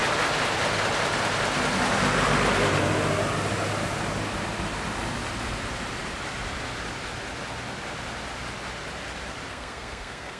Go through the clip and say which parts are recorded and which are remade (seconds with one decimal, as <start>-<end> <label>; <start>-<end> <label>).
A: 0.0-9.5 recorded; 9.5-10.4 remade